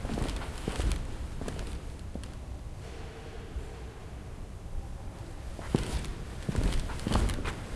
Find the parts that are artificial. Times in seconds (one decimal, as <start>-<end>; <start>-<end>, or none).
4.0-5.2